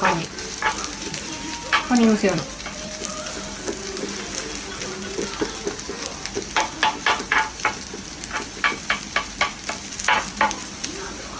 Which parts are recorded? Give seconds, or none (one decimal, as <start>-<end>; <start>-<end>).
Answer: 3.1-7.2